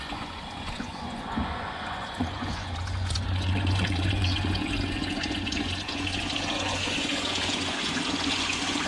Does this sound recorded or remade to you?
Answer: remade